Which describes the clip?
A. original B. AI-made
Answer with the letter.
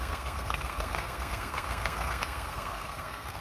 B